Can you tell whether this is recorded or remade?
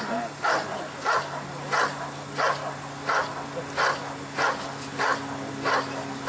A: recorded